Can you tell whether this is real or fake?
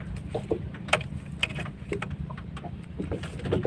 real